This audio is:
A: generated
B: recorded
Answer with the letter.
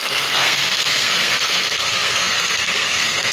A